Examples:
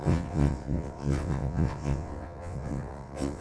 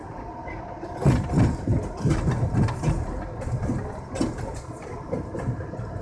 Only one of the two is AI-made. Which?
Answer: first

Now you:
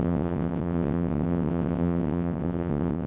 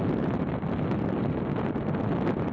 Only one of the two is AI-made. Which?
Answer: first